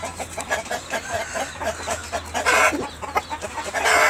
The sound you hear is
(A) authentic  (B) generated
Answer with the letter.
A